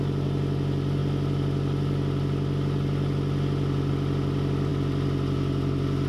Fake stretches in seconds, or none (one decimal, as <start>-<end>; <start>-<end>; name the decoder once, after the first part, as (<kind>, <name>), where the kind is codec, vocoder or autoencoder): none